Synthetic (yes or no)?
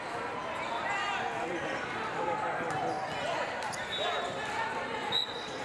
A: no